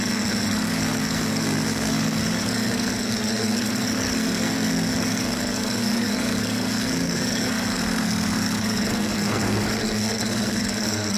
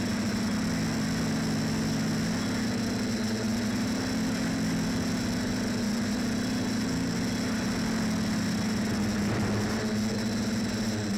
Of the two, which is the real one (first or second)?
second